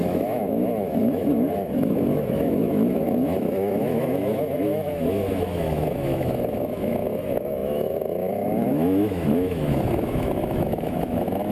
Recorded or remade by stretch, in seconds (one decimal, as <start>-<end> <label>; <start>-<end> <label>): 0.0-11.5 remade